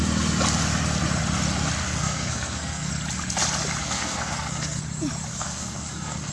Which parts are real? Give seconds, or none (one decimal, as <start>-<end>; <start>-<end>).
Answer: 0.0-1.8; 2.9-3.8; 4.8-5.3